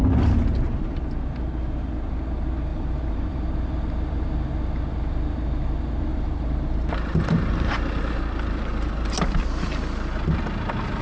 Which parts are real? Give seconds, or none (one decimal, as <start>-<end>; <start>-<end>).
0.0-2.7; 3.3-6.1; 9.1-11.0